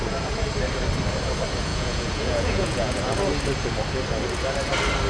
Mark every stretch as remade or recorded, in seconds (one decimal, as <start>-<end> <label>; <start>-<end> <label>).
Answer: 0.0-1.7 recorded; 1.7-3.0 remade; 3.0-5.1 recorded